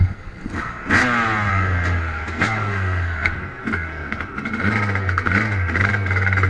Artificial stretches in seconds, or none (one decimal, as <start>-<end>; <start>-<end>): 0.0-1.0; 1.5-6.5